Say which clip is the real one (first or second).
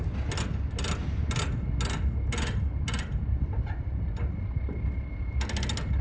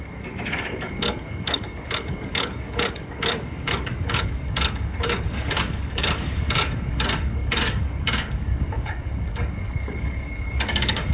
first